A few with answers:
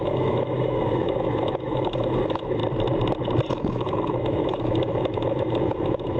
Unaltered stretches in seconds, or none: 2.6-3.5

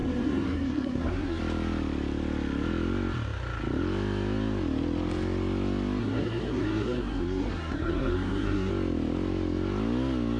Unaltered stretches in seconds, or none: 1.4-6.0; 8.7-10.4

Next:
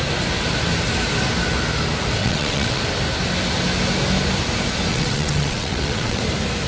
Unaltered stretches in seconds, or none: 0.0-2.2; 2.8-4.9; 6.2-6.7

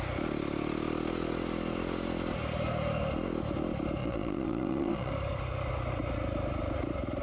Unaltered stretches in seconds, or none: 0.0-4.0; 5.1-7.2

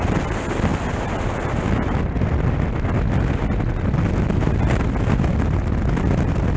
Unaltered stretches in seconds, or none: 0.0-6.6

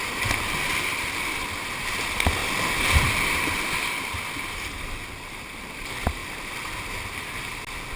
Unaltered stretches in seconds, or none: 0.0-8.0